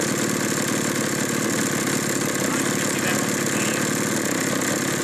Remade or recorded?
recorded